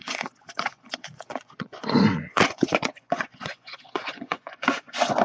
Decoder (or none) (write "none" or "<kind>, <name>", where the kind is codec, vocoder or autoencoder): vocoder, Vocos